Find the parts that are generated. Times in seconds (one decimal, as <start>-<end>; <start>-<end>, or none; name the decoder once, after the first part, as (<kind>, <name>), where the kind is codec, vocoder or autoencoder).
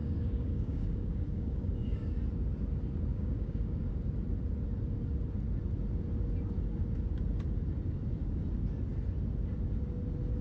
0.0-2.2 (codec, DAC); 3.1-3.9